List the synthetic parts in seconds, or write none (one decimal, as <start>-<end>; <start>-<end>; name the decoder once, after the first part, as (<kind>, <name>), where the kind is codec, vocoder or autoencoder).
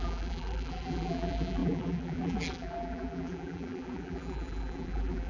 0.0-5.3 (vocoder, BigVGAN v2)